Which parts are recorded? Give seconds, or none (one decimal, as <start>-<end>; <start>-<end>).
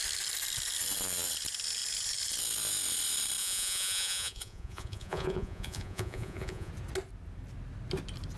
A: 0.0-3.4; 6.7-8.4